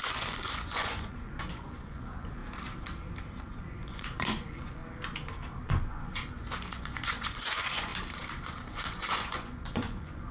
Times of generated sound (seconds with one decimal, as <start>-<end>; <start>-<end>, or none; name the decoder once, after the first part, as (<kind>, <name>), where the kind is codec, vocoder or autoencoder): 0.0-2.4 (vocoder, Vocos); 3.4-4.8; 5.6-7.9; 8.7-10.3